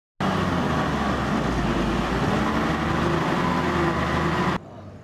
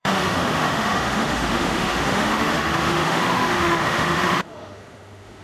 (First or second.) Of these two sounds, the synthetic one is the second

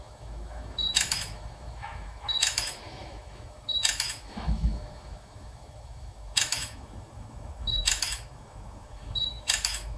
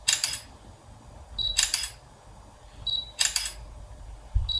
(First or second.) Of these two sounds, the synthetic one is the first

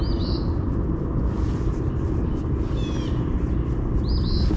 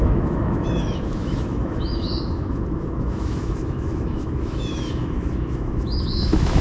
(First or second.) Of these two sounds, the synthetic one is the second